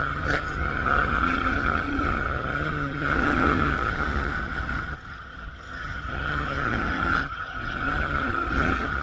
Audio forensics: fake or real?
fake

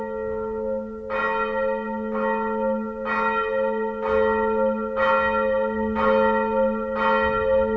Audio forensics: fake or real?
real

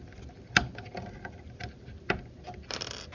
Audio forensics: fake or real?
real